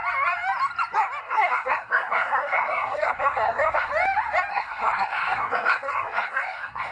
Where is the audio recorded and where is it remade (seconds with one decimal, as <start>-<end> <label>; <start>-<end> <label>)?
0.0-1.2 recorded; 1.2-3.9 remade; 3.9-4.5 recorded; 4.5-6.9 remade